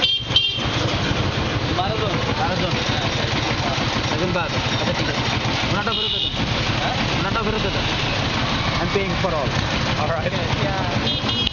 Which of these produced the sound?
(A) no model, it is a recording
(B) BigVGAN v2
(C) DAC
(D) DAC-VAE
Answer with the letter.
A